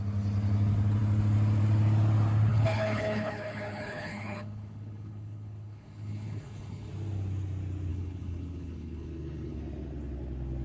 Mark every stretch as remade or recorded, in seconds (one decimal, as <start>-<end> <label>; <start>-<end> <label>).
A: 0.0-2.5 recorded; 2.5-6.9 remade; 6.9-7.9 recorded; 7.9-9.6 remade; 9.6-10.6 recorded